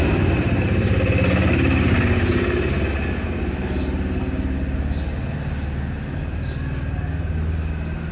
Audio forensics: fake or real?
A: real